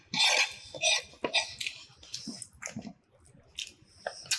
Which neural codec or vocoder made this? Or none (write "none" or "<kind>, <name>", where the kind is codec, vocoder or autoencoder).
none